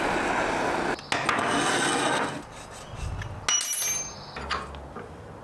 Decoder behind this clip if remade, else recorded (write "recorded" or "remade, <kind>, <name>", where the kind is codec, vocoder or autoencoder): recorded